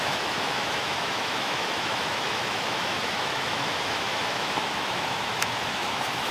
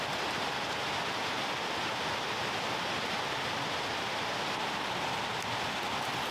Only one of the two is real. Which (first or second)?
second